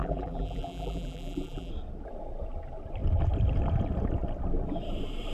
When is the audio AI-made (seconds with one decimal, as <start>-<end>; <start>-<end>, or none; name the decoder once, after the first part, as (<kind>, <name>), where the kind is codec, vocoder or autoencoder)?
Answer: 0.0-1.7 (vocoder, BigVGAN v2)